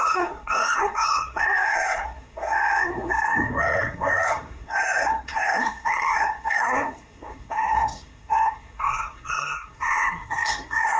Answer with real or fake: fake